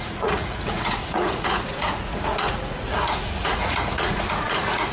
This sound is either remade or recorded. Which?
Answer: remade